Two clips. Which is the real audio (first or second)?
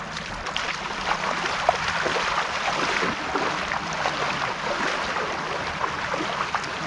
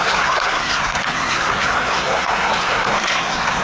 first